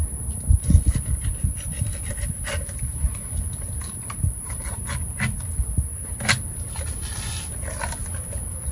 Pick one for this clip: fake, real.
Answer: real